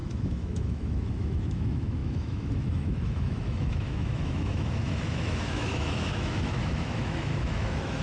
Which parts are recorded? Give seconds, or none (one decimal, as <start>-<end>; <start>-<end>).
none